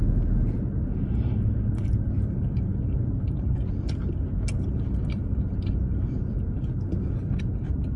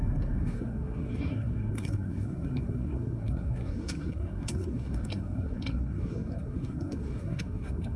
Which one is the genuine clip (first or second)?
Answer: first